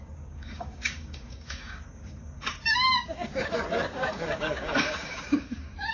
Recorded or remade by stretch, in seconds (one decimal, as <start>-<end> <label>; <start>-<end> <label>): 0.0-5.9 remade